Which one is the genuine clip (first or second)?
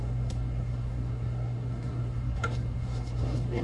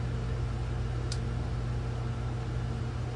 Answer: second